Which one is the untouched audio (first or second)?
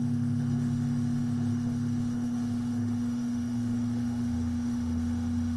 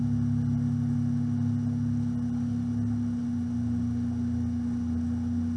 second